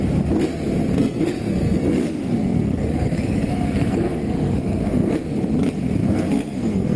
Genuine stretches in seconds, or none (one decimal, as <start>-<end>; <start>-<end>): 0.0-1.0; 5.2-6.0

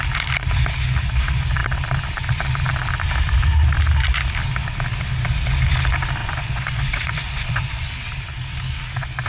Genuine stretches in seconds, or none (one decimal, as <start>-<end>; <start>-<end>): 0.0-6.2; 8.1-9.3